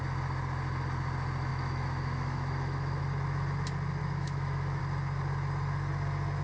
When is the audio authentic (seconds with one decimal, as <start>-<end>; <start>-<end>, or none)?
0.0-1.5; 3.0-4.0; 4.8-6.4